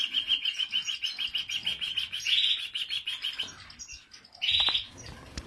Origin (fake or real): real